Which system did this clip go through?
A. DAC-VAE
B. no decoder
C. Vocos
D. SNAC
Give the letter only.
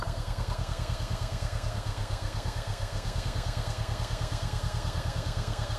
D